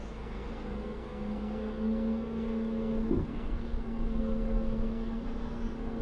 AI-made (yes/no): yes